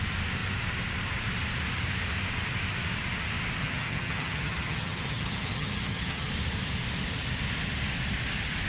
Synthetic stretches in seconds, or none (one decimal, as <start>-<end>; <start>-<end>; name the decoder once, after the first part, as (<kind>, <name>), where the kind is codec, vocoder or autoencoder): 3.6-6.3 (vocoder, HiFi-GAN)